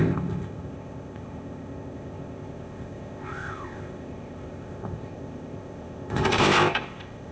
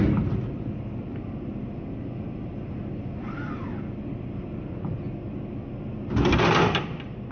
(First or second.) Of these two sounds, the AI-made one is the first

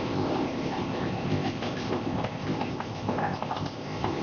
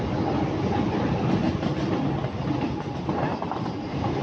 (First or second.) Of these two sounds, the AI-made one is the first